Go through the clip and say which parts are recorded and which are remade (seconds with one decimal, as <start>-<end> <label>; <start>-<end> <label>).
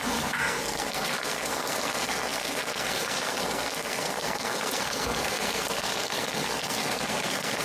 0.0-7.6 remade